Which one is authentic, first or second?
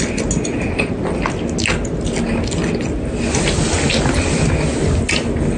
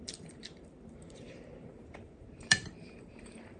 first